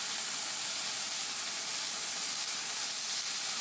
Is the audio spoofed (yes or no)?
no